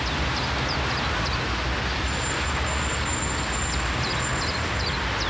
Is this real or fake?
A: real